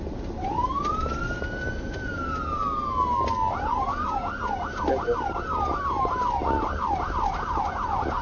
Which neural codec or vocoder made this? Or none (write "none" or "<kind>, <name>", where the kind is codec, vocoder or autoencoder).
none